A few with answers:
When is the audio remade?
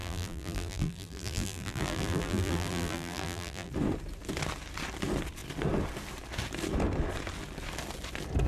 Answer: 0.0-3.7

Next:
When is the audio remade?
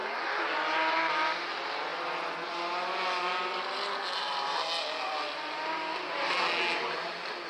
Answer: none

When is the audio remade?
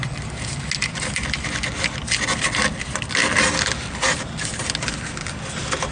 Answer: none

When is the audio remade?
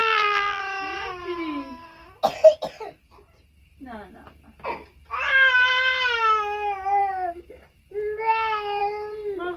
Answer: 0.0-0.6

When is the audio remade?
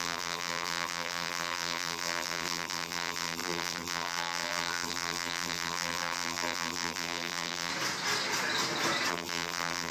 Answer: 0.0-7.7; 9.1-9.9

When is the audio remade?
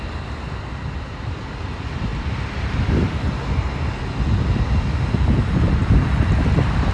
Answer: 2.1-2.9; 5.8-6.9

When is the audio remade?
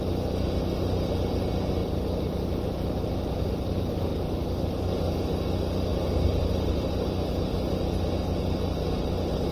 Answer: 1.8-2.4; 4.1-4.9; 5.9-6.9